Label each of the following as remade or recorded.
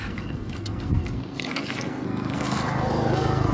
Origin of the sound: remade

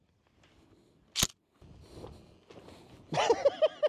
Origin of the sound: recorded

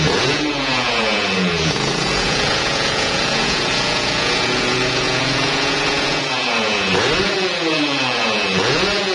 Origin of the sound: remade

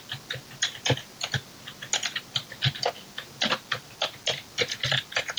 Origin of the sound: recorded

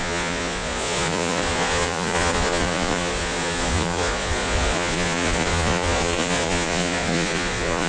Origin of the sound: remade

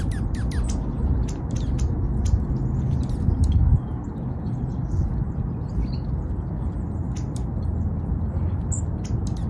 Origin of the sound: recorded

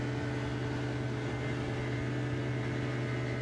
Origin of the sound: recorded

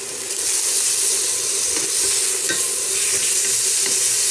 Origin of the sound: recorded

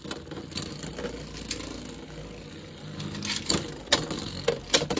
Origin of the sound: recorded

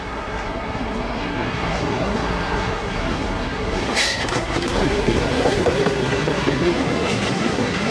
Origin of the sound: remade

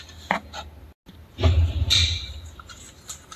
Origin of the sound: recorded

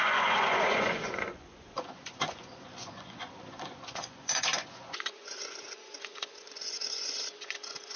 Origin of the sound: remade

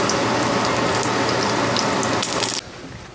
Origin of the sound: recorded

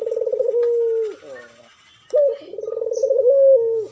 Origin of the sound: recorded